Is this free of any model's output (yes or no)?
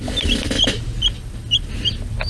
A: yes